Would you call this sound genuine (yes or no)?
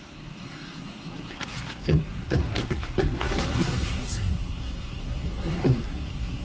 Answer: no